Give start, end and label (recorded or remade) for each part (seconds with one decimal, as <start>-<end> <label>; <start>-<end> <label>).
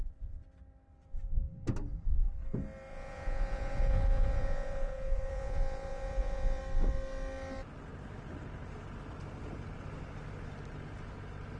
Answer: 0.0-2.9 recorded; 2.9-6.6 remade; 6.6-11.6 recorded